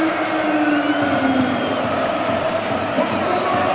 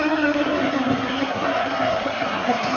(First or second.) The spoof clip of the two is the second